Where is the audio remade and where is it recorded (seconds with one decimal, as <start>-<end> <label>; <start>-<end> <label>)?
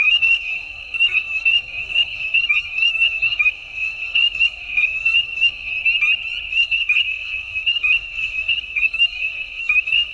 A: 0.0-5.7 remade; 5.7-6.5 recorded; 6.5-10.1 remade